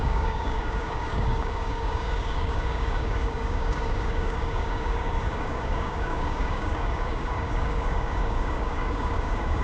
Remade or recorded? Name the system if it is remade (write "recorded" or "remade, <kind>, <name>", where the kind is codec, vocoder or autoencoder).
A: remade, codec, DAC